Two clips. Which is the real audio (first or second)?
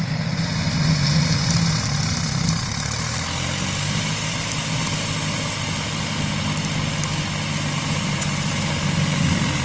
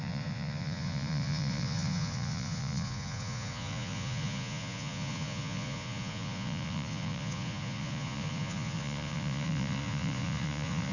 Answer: first